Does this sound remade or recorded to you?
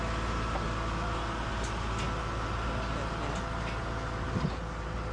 recorded